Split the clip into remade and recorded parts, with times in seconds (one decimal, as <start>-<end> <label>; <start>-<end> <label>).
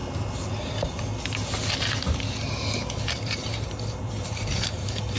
0.0-3.1 recorded; 3.1-5.2 remade